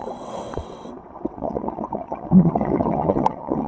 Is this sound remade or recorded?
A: remade